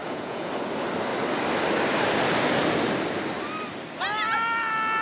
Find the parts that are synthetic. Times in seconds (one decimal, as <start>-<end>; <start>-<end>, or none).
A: 0.0-0.5